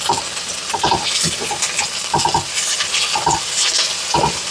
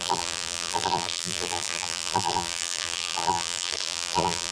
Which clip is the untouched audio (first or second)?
first